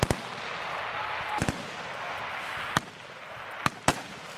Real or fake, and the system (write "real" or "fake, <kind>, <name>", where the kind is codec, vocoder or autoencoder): real